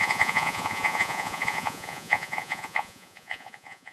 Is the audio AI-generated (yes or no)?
yes